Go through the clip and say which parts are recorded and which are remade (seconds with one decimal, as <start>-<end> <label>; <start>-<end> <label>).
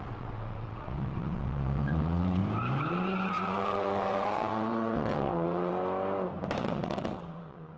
0.0-2.4 remade; 2.4-2.9 recorded; 2.9-5.7 remade; 5.7-6.6 recorded; 6.6-7.8 remade